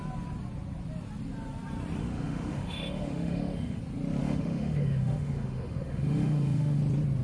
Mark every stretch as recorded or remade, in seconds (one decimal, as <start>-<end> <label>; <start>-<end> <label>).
0.0-2.0 recorded; 2.0-3.8 remade; 3.8-4.2 recorded; 4.2-6.8 remade; 6.8-7.2 recorded

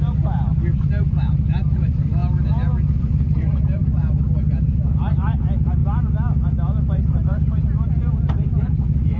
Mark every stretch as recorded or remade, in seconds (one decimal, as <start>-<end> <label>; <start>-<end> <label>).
0.0-2.2 remade; 2.2-3.0 recorded; 3.0-3.8 remade; 3.8-4.6 recorded; 4.6-5.8 remade; 5.8-6.8 recorded; 6.8-9.2 remade